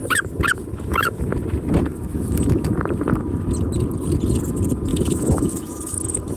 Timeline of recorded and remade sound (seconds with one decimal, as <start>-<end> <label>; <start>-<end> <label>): 0.0-1.3 remade; 1.3-1.9 recorded; 1.9-2.7 remade; 2.7-4.9 recorded; 4.9-6.4 remade